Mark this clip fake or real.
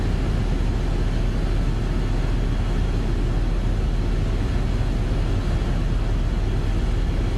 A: real